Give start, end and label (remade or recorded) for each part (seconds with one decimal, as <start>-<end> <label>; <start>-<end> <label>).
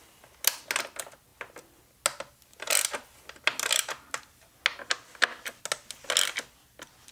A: 0.0-7.1 recorded